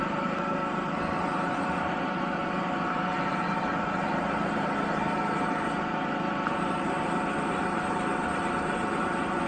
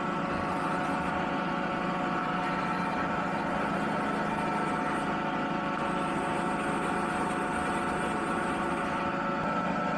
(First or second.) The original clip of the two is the second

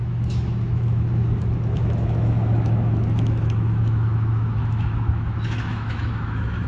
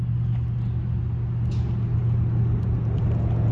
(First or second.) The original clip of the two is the second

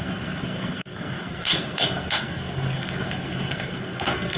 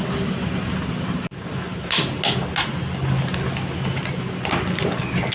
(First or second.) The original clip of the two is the second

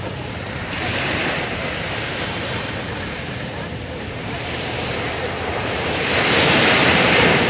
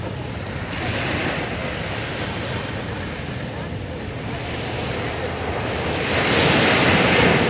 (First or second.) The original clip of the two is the second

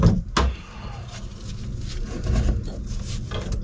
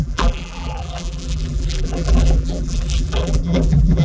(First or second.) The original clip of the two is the first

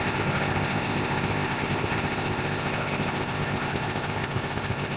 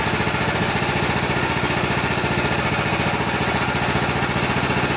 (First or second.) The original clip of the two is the second